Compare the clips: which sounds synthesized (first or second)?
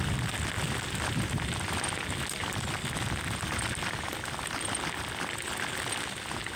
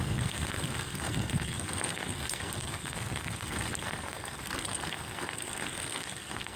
second